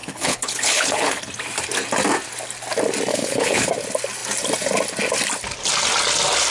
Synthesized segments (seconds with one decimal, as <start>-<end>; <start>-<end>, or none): 0.0-1.2; 3.1-3.7

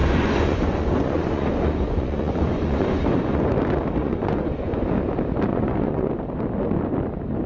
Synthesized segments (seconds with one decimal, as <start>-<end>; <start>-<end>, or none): 0.0-3.4; 4.0-4.8; 5.5-6.1

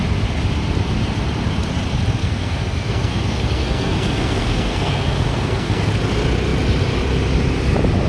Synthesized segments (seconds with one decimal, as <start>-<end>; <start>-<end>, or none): 2.2-5.9

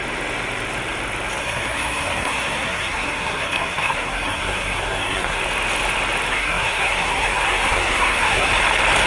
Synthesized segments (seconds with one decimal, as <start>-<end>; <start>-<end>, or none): 1.4-5.4; 6.3-8.5

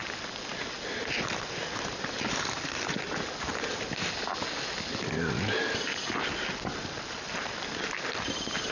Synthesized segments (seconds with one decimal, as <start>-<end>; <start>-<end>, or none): none

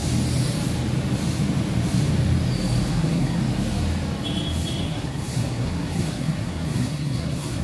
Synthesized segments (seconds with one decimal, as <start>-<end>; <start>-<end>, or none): 2.9-3.4; 4.8-7.6